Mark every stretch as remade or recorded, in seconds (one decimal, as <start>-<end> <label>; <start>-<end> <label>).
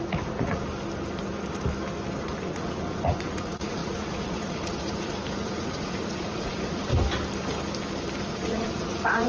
0.0-0.6 remade; 0.6-2.2 recorded; 2.2-6.9 remade; 6.9-8.2 recorded; 8.2-9.3 remade